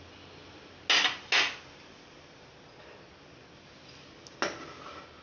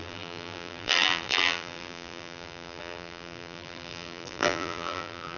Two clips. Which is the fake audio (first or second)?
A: second